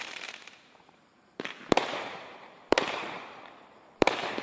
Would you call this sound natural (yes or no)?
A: no